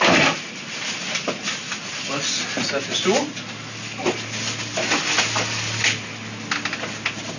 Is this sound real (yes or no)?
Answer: yes